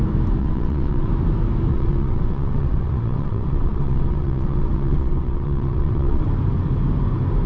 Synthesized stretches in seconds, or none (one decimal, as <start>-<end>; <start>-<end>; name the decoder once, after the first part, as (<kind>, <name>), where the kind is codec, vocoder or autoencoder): 0.4-1.1 (vocoder, WaveNeXt); 1.7-6.2